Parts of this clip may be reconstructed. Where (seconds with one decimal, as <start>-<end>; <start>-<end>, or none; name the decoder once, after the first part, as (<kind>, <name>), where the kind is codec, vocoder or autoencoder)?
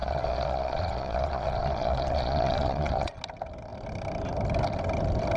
0.0-3.2 (vocoder, Vocos)